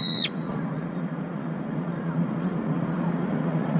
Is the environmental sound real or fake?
fake